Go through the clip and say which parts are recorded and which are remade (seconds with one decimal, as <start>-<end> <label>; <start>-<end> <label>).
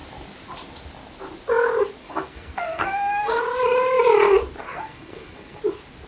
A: 0.0-2.0 recorded; 2.0-3.4 remade; 3.4-4.6 recorded; 4.6-5.6 remade; 5.6-6.1 recorded